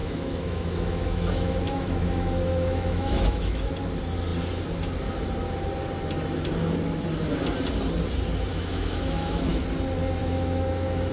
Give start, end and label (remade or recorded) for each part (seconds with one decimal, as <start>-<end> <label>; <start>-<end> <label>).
0.0-3.7 remade; 3.7-8.5 recorded; 8.5-9.6 remade; 9.6-10.2 recorded; 10.2-11.1 remade